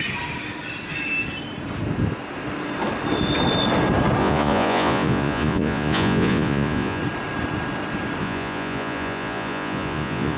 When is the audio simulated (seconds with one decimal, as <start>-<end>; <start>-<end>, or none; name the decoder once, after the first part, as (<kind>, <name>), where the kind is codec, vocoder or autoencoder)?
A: 4.2-7.0 (vocoder, Vocos); 8.2-10.4